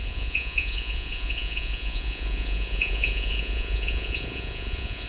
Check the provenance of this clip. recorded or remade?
remade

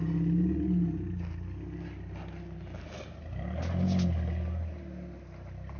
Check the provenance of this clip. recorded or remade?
recorded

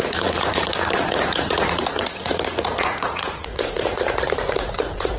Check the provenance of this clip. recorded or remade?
remade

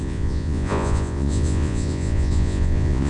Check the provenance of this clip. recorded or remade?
remade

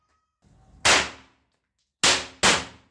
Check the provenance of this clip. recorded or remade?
recorded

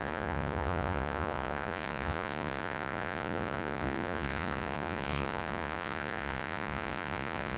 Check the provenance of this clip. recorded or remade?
remade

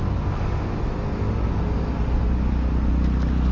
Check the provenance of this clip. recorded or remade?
recorded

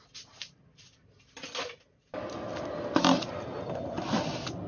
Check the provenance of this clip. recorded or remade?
recorded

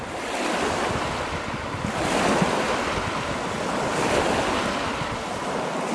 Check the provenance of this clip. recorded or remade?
recorded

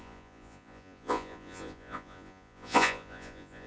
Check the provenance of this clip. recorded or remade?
remade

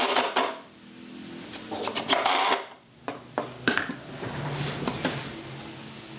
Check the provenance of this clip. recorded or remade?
recorded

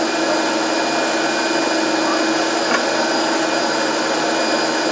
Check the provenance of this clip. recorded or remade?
recorded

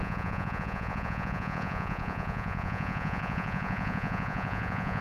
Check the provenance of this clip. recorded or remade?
remade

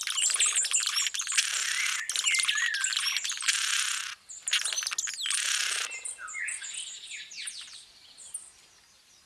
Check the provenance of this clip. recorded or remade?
recorded